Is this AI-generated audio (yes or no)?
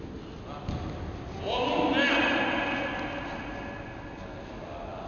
no